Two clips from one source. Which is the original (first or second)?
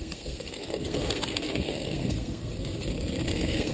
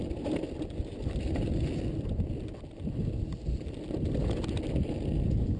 second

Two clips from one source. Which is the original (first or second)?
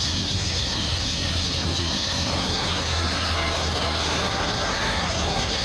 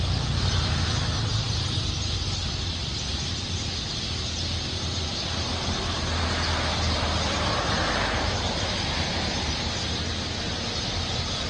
second